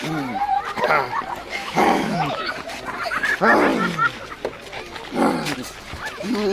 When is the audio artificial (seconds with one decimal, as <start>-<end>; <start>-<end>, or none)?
1.6-2.5